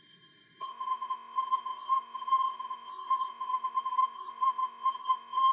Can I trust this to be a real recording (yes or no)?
no